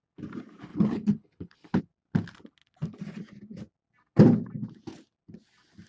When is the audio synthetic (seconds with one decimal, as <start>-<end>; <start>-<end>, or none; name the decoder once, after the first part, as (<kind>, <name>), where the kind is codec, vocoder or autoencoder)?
0.7-1.8 (codec, HILCodec)